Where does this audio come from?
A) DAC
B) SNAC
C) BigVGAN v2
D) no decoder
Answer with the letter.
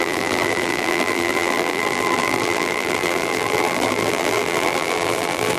C